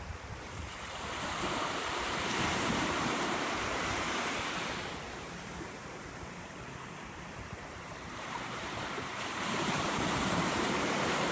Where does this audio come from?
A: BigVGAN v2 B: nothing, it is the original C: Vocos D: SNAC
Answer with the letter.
A